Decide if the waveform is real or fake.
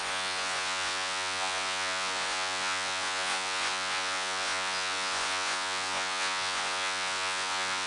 fake